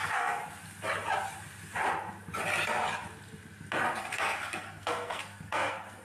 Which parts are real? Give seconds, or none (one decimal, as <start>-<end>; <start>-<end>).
0.4-4.0

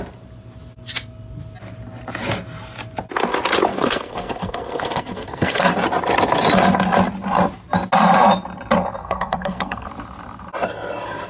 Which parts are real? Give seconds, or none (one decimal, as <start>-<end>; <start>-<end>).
0.0-3.7; 5.7-9.0; 9.9-11.3